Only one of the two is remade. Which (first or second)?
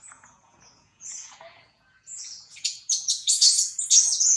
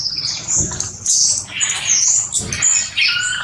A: first